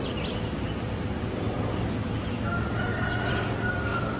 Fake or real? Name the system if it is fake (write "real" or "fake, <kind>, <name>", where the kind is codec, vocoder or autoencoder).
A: fake, vocoder, BigVGAN v2